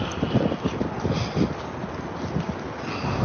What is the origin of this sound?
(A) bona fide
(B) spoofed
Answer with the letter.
A